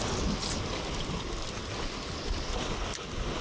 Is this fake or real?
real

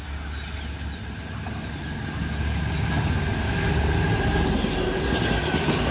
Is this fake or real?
real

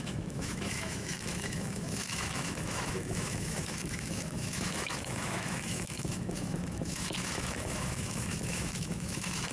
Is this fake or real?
fake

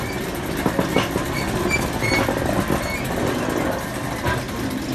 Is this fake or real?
real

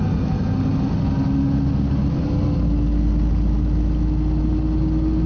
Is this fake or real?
real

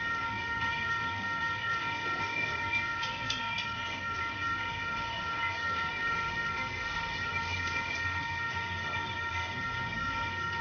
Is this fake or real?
fake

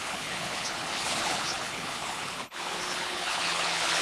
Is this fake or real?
fake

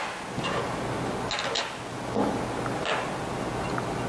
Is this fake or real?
real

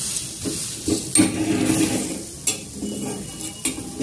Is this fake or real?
real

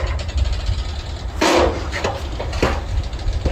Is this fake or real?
real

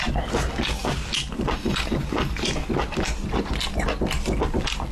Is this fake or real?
real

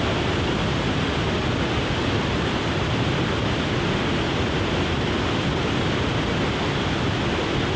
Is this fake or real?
real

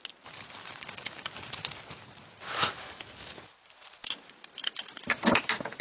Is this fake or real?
real